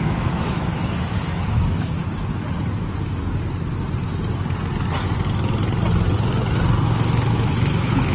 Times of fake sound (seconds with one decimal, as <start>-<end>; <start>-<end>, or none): 0.0-2.0; 6.8-8.1